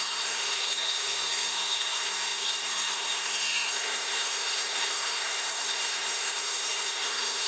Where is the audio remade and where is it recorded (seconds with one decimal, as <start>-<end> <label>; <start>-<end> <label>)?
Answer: 0.0-7.5 remade